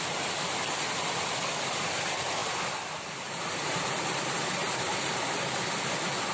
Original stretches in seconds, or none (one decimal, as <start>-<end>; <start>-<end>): 0.0-6.3